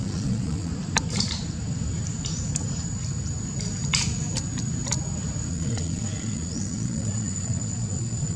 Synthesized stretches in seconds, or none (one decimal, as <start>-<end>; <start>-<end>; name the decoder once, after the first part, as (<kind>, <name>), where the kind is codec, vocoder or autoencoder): 0.0-0.7 (vocoder, Vocos); 5.5-8.4